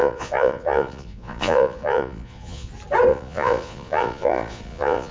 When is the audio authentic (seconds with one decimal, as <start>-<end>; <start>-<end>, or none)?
2.7-3.1